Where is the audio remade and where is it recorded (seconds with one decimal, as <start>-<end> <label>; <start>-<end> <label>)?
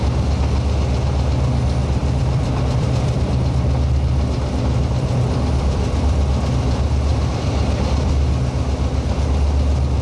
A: 0.0-2.0 recorded; 2.0-6.3 remade; 6.3-7.1 recorded; 7.1-8.1 remade; 8.1-10.0 recorded